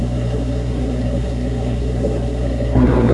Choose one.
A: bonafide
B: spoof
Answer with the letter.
B